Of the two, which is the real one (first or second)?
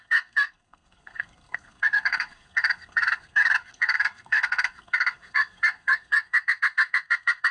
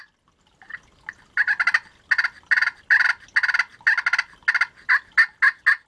second